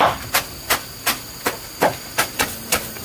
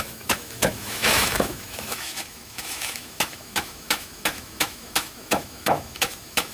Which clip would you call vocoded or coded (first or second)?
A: second